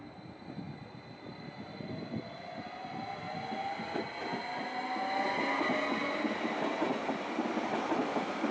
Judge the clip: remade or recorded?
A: recorded